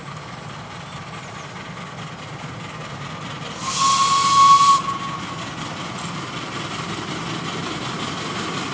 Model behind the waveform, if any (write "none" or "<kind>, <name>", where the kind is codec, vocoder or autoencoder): none